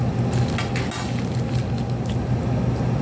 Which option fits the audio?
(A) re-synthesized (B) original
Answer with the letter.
B